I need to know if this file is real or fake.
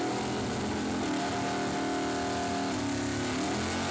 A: real